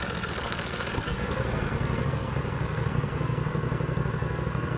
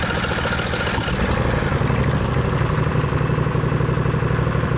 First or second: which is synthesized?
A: first